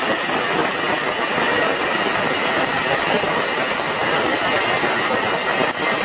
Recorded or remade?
recorded